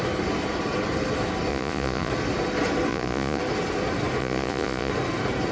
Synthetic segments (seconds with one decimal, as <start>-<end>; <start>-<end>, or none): 1.5-2.1; 2.9-3.4; 4.2-4.9